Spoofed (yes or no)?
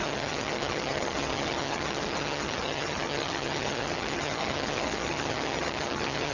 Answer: yes